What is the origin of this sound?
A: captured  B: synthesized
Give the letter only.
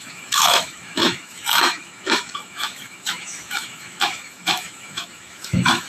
B